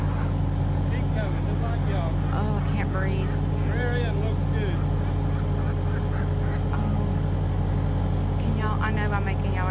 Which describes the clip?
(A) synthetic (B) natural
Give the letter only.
B